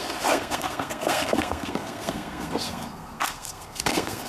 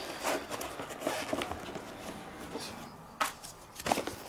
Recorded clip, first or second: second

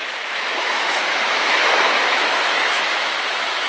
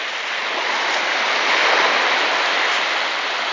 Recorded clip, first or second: second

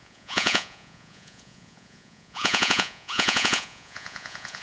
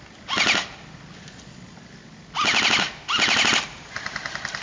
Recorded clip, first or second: second